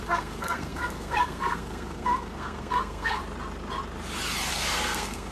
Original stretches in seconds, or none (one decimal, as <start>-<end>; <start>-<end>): 3.2-4.5